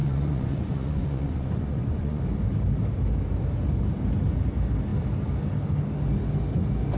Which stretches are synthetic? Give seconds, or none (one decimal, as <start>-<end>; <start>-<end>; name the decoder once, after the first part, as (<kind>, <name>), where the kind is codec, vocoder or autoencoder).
0.0-2.2 (vocoder, Vocos)